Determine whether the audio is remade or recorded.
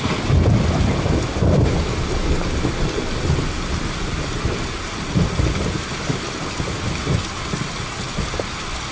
recorded